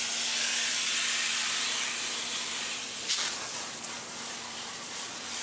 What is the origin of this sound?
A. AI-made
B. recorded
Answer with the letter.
B